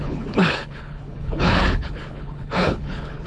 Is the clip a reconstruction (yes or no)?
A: yes